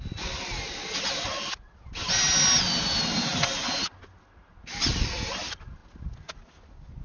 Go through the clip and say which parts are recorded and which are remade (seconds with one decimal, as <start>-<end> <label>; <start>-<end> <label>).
0.0-7.0 recorded